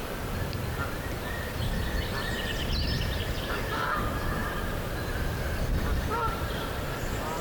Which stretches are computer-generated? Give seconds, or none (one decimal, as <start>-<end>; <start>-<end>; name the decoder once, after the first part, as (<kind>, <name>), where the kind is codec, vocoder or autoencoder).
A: none